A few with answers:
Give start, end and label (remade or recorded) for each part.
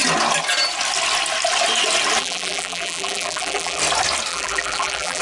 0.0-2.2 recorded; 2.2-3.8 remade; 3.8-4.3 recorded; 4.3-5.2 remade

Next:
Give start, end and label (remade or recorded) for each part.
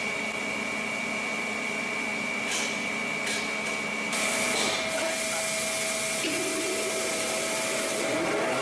0.0-8.6 recorded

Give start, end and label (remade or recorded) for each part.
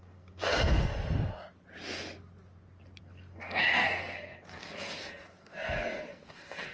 0.0-0.9 remade; 0.9-3.0 recorded; 3.0-6.7 remade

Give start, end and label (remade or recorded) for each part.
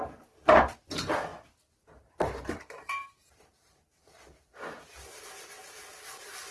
0.0-6.5 remade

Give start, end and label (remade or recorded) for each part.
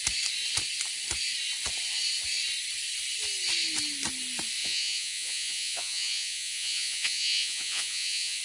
0.0-4.6 recorded; 4.6-8.4 remade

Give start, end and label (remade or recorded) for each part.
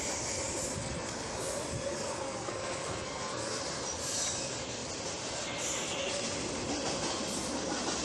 0.0-0.8 recorded; 0.8-1.5 remade; 1.5-1.9 recorded; 1.9-3.6 remade; 3.6-8.0 recorded